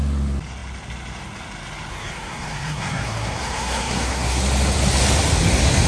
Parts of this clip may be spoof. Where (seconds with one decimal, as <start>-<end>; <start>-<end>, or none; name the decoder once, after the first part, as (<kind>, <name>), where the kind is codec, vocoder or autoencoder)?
1.9-4.4 (codec, SNAC)